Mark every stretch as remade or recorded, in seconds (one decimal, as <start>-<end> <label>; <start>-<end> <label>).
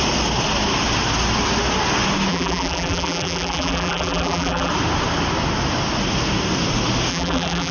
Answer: 0.0-2.3 recorded; 2.3-4.7 remade; 4.7-7.1 recorded; 7.1-7.7 remade